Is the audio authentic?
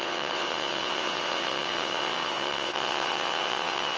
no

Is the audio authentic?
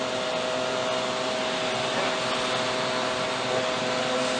yes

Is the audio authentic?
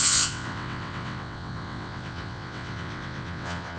no